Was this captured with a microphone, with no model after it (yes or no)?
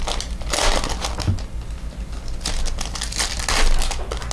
yes